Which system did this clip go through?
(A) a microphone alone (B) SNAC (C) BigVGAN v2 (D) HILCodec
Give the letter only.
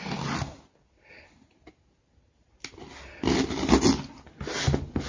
A